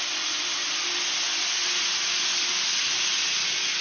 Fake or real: real